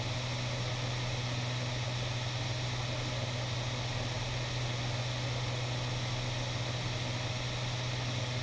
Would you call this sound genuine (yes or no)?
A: yes